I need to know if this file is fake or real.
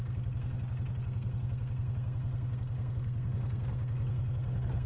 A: fake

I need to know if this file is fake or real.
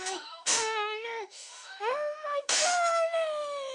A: fake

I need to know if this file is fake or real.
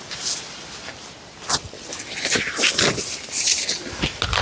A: real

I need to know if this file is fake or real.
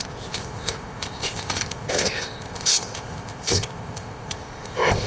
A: fake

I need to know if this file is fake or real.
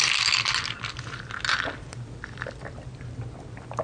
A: real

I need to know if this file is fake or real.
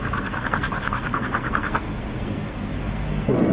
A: fake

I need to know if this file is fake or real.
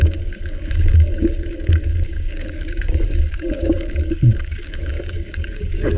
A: fake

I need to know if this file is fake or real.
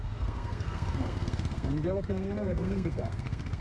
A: fake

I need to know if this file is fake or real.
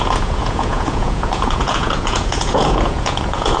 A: fake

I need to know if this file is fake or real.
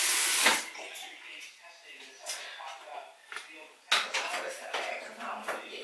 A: real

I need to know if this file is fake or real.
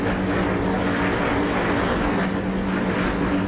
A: real